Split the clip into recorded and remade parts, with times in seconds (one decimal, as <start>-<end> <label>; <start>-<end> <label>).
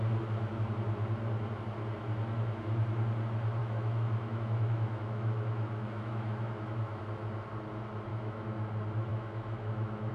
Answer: 0.0-3.6 recorded; 3.6-7.0 remade; 7.0-8.1 recorded; 8.1-8.7 remade; 8.7-9.1 recorded; 9.1-10.1 remade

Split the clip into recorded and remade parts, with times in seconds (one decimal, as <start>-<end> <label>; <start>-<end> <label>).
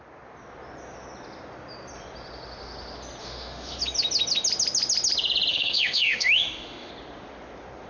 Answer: 0.0-3.2 recorded; 3.2-3.8 remade; 3.8-5.5 recorded; 5.5-6.9 remade; 6.9-7.9 recorded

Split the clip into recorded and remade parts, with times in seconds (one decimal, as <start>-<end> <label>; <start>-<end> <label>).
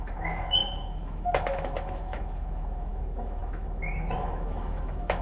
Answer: 0.0-5.2 remade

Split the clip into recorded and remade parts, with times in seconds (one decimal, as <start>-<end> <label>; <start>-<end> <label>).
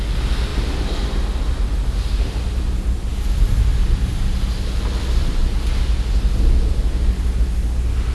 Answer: 0.0-8.1 recorded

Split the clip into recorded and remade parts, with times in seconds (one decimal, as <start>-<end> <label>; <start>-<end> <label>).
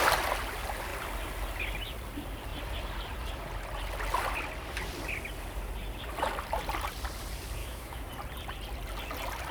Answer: 0.0-7.6 recorded; 7.6-8.1 remade; 8.1-9.5 recorded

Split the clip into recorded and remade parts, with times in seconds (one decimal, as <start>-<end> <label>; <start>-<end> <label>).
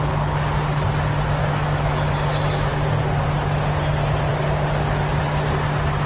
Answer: 0.0-1.4 recorded; 1.4-2.7 remade; 2.7-6.1 recorded